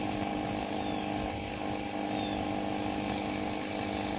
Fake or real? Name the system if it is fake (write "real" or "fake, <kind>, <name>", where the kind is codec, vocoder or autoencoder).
real